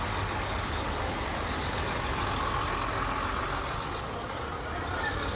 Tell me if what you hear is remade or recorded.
recorded